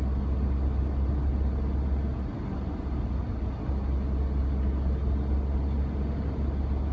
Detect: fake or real real